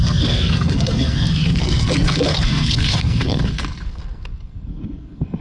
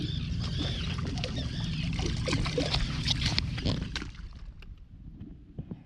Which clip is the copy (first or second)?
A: first